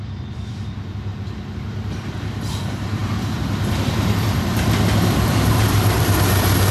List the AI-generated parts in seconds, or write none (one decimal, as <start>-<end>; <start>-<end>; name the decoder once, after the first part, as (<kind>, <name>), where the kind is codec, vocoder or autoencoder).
0.0-1.1 (vocoder, BigVGAN v2); 2.5-6.7